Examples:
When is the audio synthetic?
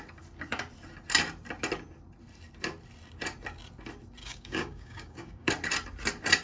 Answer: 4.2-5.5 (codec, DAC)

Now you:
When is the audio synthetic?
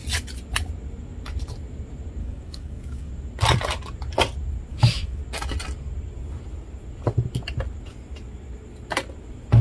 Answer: 2.2-3.1 (codec, DAC); 4.7-5.2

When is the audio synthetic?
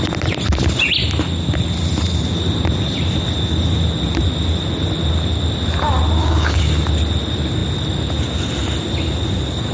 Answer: 6.2-6.7 (codec, DAC)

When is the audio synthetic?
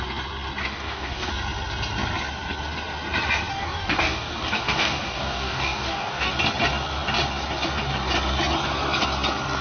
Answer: 0.6-1.3 (codec, DAC); 3.5-6.3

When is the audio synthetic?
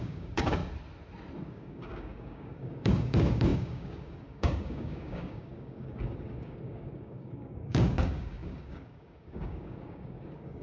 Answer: 0.0-0.6 (codec, DAC); 1.5-10.6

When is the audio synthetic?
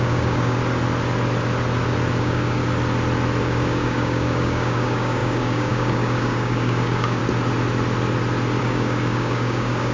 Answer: 0.0-0.6 (codec, DAC); 2.2-2.6; 3.4-7.2; 8.6-9.9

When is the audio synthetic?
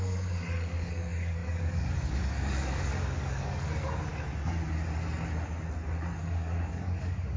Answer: 0.0-4.1 (codec, DAC); 6.2-7.4